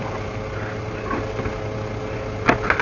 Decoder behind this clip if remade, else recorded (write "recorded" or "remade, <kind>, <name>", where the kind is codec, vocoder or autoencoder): recorded